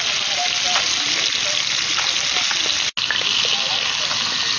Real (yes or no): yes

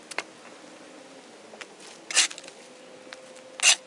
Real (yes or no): yes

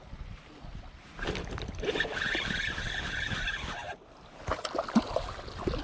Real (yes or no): yes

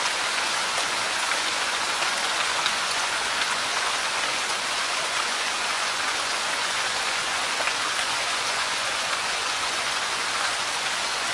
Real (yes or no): no